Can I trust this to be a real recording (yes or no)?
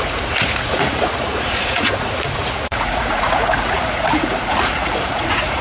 no